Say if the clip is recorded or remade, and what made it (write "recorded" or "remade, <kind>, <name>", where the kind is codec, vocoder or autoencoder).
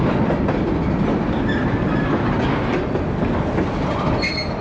recorded